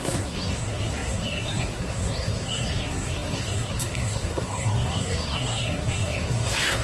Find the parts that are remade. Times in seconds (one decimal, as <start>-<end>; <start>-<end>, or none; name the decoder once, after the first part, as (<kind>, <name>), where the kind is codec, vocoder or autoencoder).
0.0-6.8 (codec, SNAC)